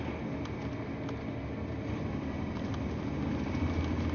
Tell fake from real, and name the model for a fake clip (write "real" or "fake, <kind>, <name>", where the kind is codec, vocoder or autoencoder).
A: real